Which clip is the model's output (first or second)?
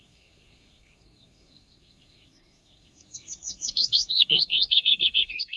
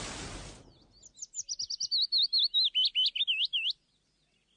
first